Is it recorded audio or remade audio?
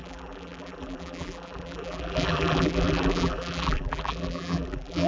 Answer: remade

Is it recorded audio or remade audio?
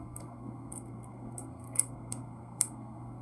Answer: remade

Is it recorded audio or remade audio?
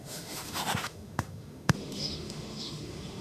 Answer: remade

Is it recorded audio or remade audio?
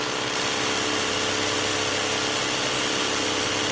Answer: recorded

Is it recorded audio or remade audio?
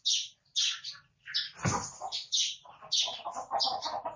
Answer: recorded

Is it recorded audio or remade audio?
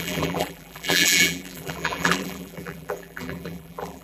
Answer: remade